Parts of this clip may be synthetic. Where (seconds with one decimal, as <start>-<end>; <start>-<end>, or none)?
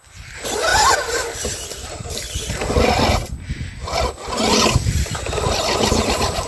none